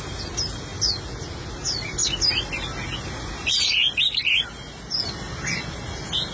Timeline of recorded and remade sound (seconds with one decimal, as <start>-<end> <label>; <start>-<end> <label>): 0.0-6.3 recorded